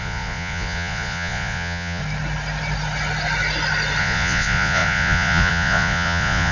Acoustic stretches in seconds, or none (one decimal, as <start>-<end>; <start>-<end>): 2.0-4.0